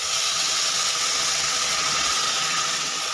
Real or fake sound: fake